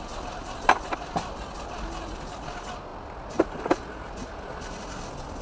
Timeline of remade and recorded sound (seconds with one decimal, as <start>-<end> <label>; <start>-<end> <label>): 0.0-5.4 recorded